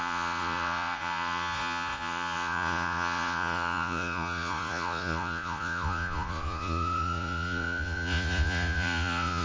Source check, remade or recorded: remade